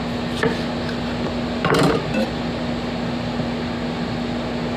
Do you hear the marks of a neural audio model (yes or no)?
no